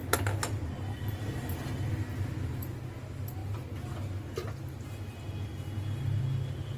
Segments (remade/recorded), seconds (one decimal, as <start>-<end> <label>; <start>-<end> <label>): 0.0-6.8 recorded